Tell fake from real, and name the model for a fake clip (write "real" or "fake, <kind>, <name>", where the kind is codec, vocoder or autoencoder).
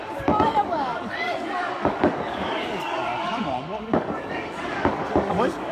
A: fake, codec, DAC